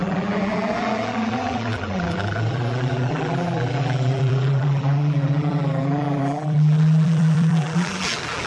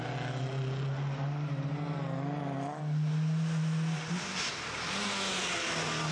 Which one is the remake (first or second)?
first